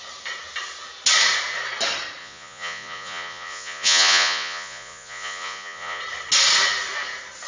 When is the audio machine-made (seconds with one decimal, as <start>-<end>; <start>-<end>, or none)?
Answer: 2.2-6.0